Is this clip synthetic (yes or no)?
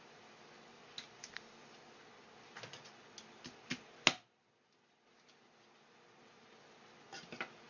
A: no